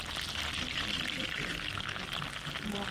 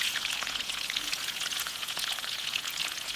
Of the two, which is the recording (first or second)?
first